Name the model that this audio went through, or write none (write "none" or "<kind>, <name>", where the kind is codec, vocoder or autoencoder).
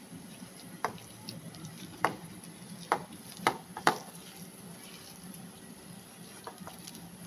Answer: vocoder, BigVGAN v2